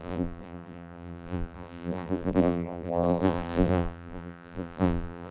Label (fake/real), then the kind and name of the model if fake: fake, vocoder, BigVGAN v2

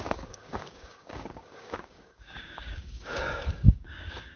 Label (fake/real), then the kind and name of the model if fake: fake, codec, DAC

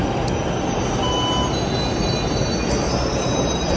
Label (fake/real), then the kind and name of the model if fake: real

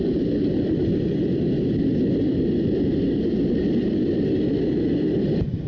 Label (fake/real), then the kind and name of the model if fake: real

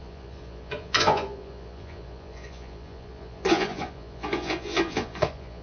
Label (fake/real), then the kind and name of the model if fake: fake, vocoder, Vocos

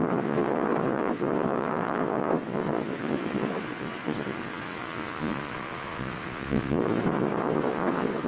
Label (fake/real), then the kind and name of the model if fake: fake, vocoder, Vocos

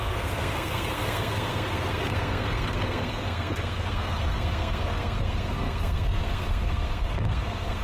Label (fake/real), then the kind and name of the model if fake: fake, codec, SNAC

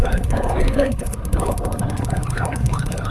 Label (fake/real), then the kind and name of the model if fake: fake, codec, SNAC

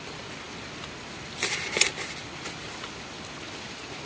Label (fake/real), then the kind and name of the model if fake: real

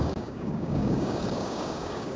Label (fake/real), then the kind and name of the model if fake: fake, codec, DAC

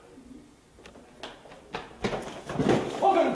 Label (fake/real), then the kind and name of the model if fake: real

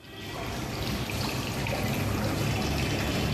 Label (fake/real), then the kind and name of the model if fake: real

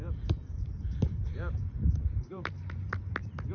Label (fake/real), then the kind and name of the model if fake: fake, vocoder, BigVGAN v2